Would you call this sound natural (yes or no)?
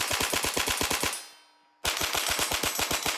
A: yes